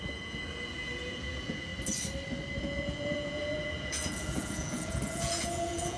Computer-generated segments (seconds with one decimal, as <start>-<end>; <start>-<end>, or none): 0.0-1.7; 2.6-6.0